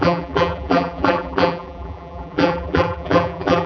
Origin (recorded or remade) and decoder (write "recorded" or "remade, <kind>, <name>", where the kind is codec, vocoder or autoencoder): remade, vocoder, BigVGAN v2